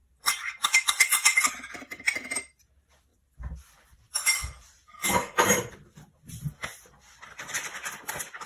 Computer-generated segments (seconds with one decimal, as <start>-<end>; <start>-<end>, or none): 0.0-1.5